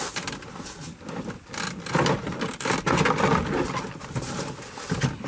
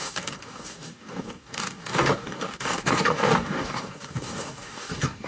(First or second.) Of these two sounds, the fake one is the second